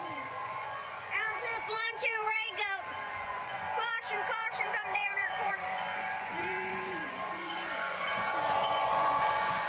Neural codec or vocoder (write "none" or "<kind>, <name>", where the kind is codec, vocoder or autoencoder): vocoder, Vocos